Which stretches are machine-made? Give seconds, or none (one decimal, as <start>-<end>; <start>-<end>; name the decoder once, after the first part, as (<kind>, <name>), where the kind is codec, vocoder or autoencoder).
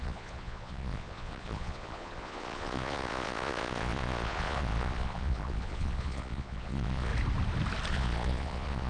0.0-7.1 (vocoder, Vocos); 7.9-8.9